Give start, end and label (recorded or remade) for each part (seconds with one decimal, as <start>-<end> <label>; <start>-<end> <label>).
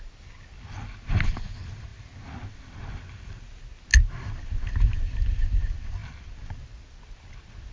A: 0.0-7.7 recorded